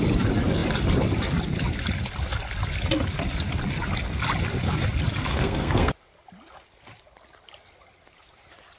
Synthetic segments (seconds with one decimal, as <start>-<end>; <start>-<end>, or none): 5.3-5.9

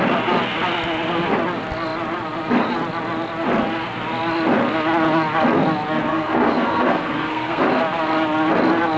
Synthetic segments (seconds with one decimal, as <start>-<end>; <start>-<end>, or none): 6.1-7.6

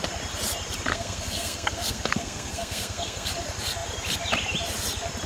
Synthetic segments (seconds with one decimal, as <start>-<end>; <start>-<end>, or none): 0.9-3.3

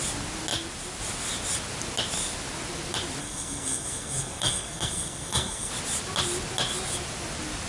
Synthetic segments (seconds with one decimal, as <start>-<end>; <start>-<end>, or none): 3.2-5.7